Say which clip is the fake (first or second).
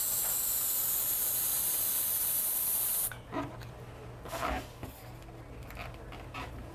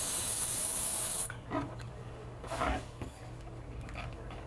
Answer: second